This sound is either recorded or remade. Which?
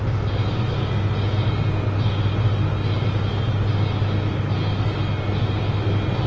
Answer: recorded